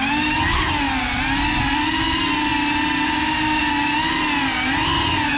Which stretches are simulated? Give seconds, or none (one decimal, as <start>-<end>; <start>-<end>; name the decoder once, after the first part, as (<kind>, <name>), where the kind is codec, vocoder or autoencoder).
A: none